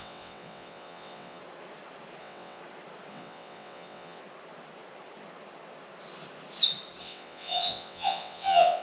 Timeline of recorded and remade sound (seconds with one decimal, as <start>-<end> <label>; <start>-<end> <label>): 0.0-1.4 remade; 1.4-2.2 recorded; 2.2-2.6 remade; 2.6-3.1 recorded; 3.1-4.2 remade; 4.2-7.0 recorded; 7.0-8.8 remade